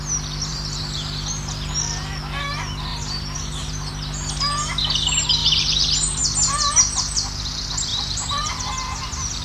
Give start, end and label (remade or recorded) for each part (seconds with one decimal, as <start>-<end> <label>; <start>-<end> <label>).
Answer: 0.0-0.5 recorded; 0.5-1.7 remade; 1.7-2.9 recorded; 2.9-3.9 remade; 3.9-5.4 recorded; 5.4-6.2 remade; 6.2-7.9 recorded; 7.9-8.5 remade; 8.5-9.4 recorded